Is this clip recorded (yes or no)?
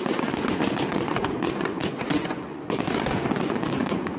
no